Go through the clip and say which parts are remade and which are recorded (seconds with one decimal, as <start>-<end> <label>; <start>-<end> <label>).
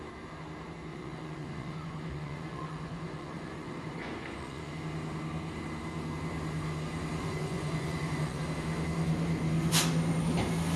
0.0-0.9 recorded; 0.9-4.7 remade; 4.7-7.2 recorded; 7.2-8.4 remade; 8.4-10.8 recorded